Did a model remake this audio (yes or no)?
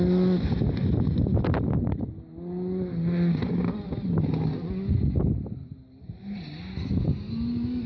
no